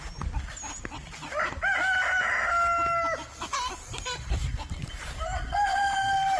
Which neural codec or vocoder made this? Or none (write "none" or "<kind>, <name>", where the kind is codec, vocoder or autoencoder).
none